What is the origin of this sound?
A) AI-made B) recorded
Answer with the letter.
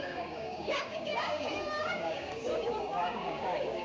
A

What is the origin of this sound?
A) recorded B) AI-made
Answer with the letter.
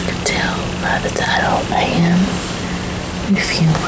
A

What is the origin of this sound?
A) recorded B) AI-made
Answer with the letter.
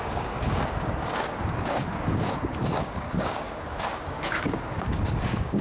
B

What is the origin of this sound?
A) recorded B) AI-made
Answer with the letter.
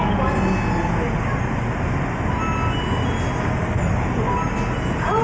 A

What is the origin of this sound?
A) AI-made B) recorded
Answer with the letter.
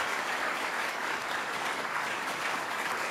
A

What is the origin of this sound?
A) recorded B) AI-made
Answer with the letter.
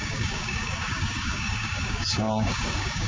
B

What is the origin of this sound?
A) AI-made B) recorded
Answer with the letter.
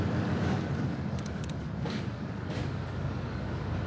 A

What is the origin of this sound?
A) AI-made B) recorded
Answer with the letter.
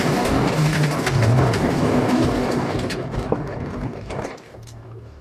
A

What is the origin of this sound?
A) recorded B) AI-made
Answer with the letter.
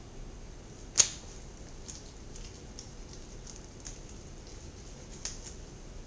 A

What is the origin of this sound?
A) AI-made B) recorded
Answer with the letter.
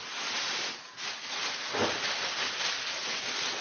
B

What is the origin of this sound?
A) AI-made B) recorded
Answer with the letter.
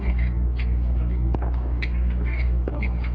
A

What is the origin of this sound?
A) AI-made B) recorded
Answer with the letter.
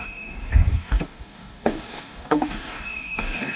A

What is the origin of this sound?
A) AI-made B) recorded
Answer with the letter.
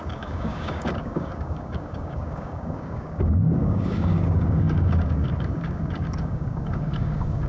A